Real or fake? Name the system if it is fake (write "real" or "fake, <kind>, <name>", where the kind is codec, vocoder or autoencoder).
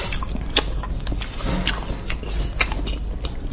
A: real